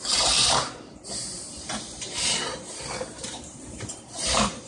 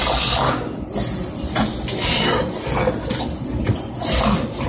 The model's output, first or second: first